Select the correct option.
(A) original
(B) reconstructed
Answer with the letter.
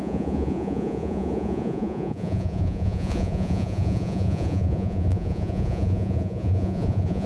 B